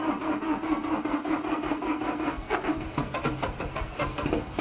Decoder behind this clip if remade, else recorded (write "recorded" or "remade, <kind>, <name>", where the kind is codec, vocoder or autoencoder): remade, codec, SNAC